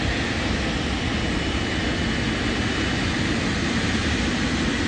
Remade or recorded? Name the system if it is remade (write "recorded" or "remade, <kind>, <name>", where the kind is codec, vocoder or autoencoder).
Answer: recorded